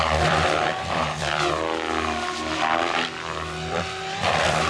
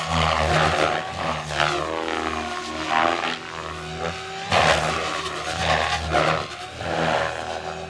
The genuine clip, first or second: second